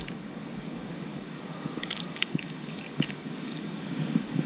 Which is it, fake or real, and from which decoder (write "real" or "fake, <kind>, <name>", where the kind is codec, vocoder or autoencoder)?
fake, codec, DAC